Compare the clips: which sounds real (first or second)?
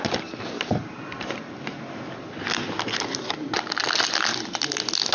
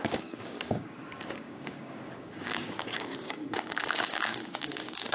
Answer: first